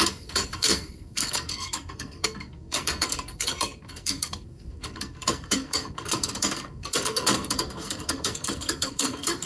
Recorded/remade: remade